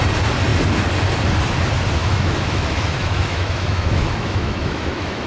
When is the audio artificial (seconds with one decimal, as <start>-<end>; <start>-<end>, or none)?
2.0-5.3